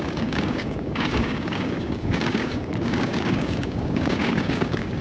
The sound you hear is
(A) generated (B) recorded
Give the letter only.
A